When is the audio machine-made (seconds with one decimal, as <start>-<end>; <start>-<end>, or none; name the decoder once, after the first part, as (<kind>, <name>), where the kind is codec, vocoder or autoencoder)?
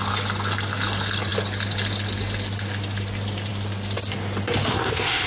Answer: 4.7-5.3 (codec, ZipCodec)